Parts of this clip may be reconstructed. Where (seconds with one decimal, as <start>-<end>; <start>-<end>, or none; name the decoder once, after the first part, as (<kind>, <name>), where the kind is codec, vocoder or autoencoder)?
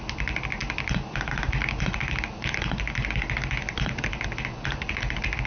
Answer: none